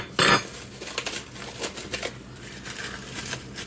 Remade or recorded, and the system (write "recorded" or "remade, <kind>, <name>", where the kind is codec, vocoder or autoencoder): recorded